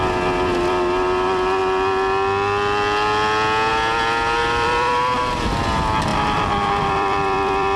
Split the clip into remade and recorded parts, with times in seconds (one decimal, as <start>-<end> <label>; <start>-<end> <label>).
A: 0.0-4.4 recorded; 4.4-5.4 remade; 5.4-6.1 recorded; 6.1-7.8 remade